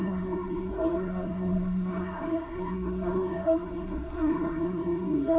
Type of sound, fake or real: fake